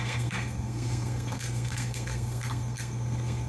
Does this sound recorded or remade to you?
remade